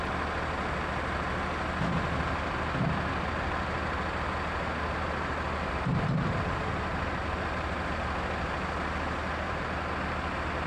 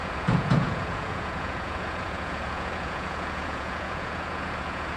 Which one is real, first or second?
first